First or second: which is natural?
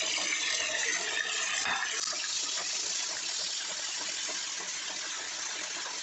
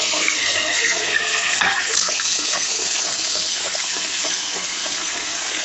first